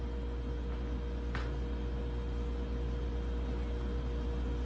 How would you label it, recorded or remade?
recorded